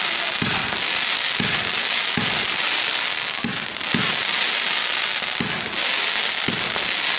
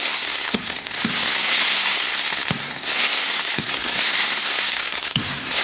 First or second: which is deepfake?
second